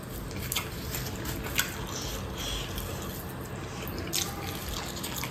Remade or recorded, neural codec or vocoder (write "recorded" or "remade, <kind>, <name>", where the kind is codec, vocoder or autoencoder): recorded